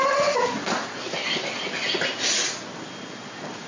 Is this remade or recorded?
recorded